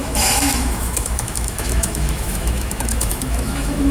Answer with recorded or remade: remade